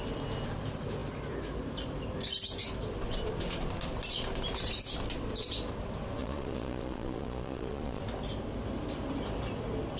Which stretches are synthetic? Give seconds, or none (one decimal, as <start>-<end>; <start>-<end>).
6.2-8.0